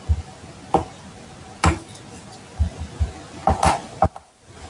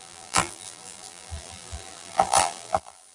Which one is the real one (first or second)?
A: first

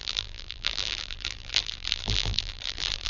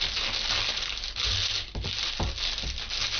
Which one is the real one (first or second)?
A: second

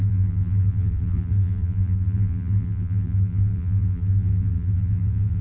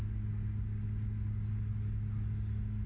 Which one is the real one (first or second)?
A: second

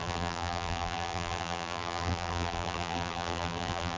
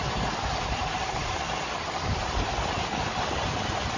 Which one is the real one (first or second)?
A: second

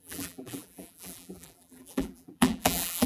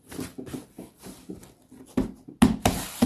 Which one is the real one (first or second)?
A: second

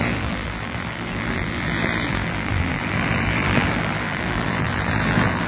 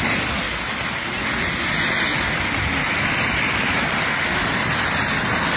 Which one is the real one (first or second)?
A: second